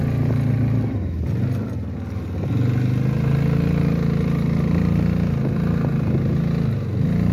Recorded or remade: recorded